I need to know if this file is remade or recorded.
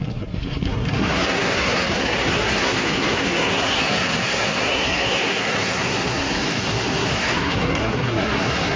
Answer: remade